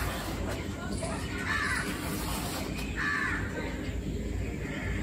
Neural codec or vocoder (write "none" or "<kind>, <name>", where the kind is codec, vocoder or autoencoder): none